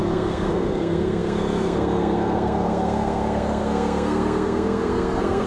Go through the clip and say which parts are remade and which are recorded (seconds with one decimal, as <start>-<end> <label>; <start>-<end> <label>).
0.0-5.5 remade